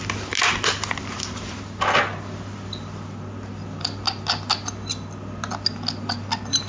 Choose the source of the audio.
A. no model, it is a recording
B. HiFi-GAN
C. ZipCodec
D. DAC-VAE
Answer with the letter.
A